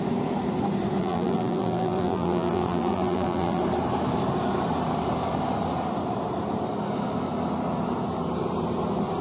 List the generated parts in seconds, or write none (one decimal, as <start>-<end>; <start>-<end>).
1.0-3.6